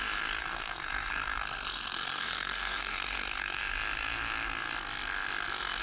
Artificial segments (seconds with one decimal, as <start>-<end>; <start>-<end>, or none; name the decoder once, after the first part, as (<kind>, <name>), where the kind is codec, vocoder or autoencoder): 0.4-3.6 (codec, SNAC)